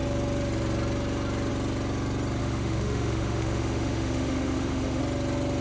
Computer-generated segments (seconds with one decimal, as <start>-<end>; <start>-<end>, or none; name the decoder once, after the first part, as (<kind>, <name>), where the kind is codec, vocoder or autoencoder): 2.4-5.0 (autoencoder, DAC-VAE)